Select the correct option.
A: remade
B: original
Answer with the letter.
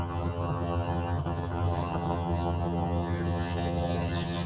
A